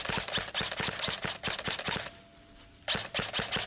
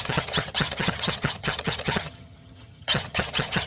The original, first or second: first